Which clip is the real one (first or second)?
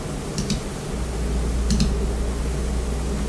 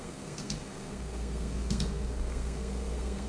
first